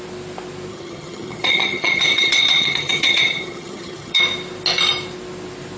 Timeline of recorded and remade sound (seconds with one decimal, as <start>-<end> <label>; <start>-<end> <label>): 0.0-0.7 recorded; 0.7-4.2 remade; 4.2-5.8 recorded